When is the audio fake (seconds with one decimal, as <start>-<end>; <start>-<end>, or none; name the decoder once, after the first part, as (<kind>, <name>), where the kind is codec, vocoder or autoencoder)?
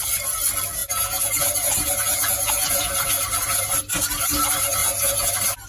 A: 0.8-3.0 (vocoder, Vocos); 4.8-5.3